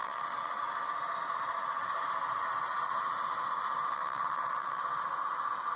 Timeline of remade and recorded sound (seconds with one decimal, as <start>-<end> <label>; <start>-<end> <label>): 0.0-0.6 remade; 0.6-3.9 recorded; 3.9-4.8 remade; 4.8-5.8 recorded